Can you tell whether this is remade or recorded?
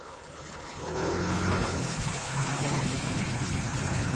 remade